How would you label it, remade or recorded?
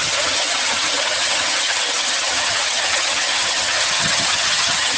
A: remade